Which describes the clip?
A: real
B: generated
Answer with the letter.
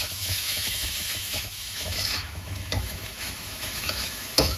B